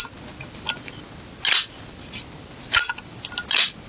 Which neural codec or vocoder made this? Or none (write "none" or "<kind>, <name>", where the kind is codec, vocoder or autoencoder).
none